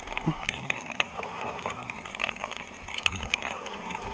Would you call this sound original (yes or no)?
no